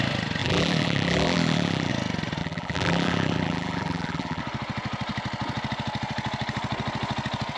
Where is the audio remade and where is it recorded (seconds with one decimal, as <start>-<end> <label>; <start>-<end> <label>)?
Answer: 0.0-0.4 recorded; 0.4-1.9 remade; 1.9-2.4 recorded; 2.4-4.4 remade; 4.4-7.6 recorded